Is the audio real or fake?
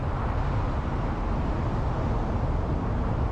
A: real